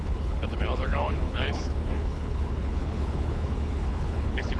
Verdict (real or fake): fake